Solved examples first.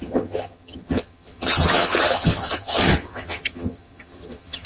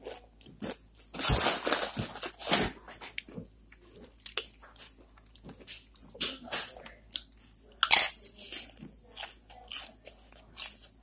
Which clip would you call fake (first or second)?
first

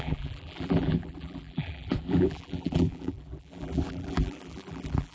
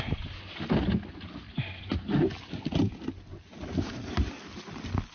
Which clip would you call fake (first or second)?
first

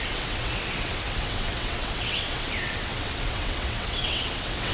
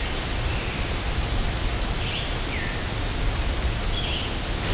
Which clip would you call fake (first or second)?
first